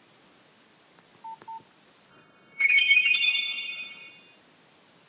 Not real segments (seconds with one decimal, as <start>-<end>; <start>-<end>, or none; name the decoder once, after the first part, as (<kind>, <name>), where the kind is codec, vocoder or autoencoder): 2.1-4.1 (codec, HILCodec)